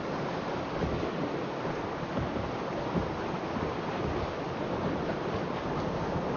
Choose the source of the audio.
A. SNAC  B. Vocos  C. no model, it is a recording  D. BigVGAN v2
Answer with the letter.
C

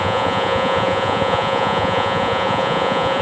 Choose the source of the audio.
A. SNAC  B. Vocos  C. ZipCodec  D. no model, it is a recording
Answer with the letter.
B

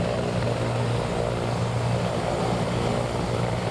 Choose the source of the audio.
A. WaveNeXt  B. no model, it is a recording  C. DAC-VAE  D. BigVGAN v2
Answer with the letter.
B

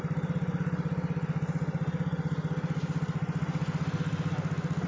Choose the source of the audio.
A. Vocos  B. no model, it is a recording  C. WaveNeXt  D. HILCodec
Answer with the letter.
B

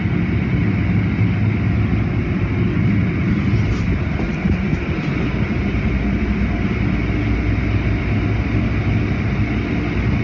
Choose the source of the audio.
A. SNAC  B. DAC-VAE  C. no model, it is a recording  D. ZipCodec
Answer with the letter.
C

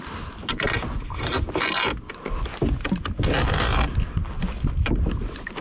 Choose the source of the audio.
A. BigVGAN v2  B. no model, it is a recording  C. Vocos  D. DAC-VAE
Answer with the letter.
B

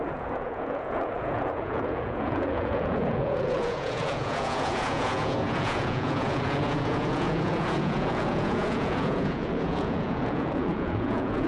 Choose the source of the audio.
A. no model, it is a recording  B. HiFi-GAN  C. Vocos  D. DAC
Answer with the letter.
C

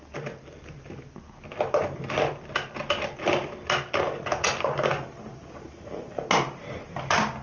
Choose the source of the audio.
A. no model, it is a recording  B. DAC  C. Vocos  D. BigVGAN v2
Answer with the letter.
A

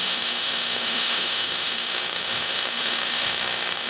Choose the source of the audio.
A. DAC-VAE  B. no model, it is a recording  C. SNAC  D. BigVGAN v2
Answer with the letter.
A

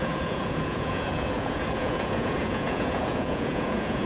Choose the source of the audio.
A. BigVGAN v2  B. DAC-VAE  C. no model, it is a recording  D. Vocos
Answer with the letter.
D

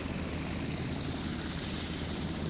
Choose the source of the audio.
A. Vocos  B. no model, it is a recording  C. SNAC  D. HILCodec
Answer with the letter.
B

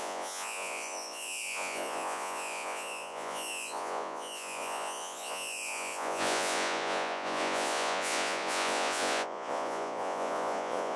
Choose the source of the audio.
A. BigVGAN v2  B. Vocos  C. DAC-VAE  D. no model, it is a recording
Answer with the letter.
B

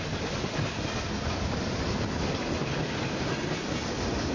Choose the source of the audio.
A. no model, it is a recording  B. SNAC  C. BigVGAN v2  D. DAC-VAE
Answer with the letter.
A